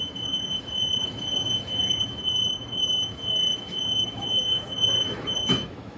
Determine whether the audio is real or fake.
fake